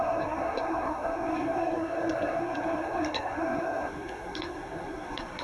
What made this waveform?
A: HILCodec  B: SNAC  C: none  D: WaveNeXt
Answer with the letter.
B